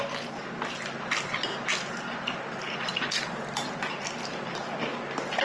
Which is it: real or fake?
real